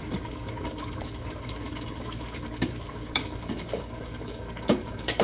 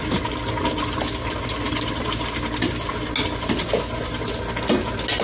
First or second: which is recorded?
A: second